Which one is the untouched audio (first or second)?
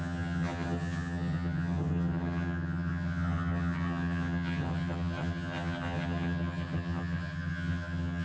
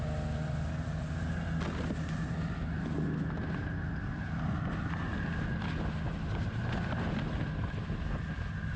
second